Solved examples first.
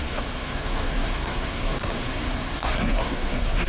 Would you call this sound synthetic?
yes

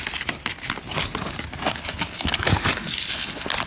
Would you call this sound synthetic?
no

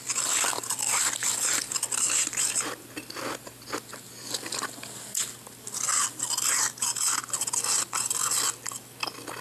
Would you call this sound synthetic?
no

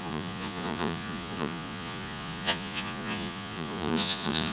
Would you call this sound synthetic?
yes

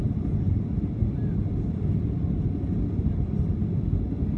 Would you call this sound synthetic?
no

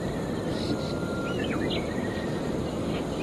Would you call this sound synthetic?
no